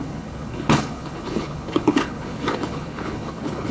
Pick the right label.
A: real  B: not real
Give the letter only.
B